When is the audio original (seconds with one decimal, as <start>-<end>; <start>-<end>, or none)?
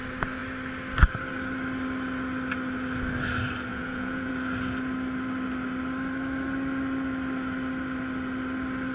0.0-3.7; 4.3-8.9